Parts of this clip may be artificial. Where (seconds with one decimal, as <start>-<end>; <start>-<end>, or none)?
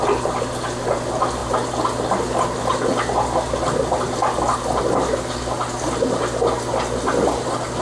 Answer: none